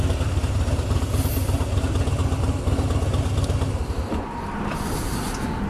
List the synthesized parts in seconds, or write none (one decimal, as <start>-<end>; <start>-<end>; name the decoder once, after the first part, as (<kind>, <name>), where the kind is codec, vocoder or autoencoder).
none